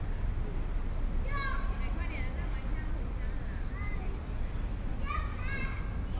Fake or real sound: real